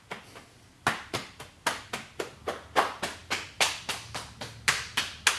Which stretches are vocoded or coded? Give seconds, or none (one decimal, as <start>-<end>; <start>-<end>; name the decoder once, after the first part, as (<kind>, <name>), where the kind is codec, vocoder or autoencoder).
none